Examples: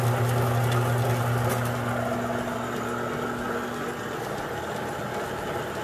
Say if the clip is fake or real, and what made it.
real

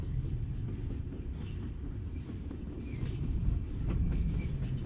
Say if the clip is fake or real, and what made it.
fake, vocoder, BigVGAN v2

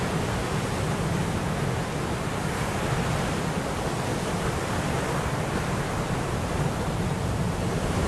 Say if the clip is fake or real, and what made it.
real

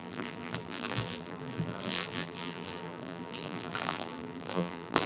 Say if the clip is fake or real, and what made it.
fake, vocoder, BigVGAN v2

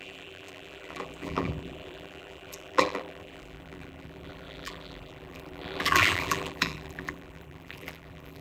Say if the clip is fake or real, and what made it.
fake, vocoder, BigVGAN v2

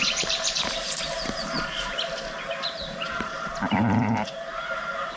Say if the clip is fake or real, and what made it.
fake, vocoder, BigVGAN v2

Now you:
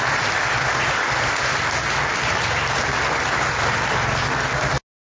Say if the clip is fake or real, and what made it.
real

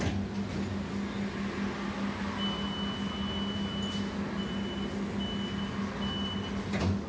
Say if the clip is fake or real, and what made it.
real